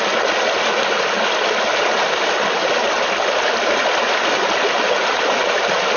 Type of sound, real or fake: real